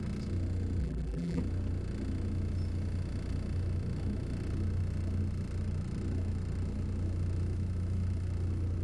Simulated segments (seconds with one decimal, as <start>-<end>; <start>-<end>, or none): 0.8-1.4